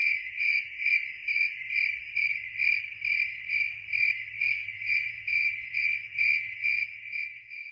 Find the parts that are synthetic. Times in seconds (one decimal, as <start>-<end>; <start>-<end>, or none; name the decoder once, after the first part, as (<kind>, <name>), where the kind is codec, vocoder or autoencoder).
0.0-0.7 (vocoder, Vocos); 4.6-7.7